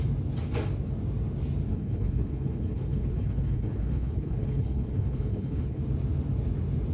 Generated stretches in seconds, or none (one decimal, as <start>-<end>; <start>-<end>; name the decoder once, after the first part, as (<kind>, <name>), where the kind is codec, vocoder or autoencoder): 1.7-5.8 (codec, HILCodec)